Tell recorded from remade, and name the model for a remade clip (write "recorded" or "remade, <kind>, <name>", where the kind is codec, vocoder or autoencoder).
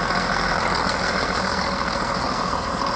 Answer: remade, codec, SNAC